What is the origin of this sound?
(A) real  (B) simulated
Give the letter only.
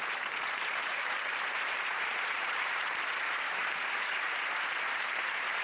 B